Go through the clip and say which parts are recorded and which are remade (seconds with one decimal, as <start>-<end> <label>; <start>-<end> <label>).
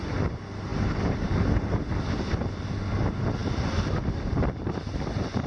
0.0-5.5 recorded